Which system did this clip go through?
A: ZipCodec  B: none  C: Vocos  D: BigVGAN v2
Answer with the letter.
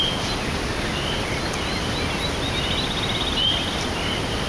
B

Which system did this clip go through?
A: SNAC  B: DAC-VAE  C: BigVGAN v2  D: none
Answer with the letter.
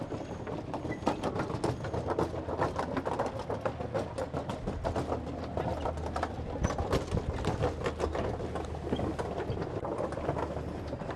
D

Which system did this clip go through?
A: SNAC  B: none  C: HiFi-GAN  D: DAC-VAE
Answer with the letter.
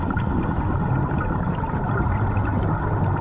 B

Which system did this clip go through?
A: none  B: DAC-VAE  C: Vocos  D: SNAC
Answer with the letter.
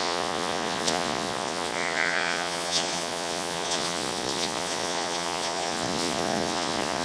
C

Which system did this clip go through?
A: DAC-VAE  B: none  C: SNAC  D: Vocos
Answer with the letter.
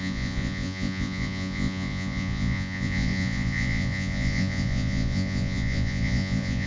D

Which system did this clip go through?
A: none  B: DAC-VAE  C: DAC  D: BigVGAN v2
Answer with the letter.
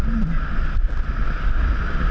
A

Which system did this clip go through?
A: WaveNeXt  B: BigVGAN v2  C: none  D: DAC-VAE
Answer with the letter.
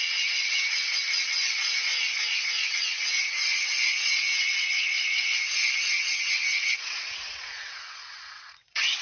A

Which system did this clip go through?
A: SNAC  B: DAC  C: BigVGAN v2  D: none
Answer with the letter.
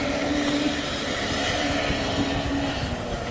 C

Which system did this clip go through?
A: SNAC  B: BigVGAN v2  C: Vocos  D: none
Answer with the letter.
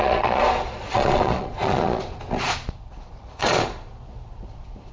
C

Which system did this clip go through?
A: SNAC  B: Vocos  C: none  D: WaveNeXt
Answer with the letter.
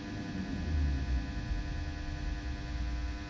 C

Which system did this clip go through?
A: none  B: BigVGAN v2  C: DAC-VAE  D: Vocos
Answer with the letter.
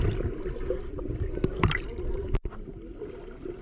A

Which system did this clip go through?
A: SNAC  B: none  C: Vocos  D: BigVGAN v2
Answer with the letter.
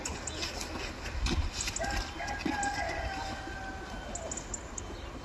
B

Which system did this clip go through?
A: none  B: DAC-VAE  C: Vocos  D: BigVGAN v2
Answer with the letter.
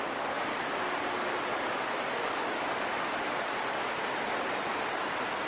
A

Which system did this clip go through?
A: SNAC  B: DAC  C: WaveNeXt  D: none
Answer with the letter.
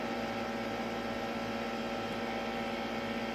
D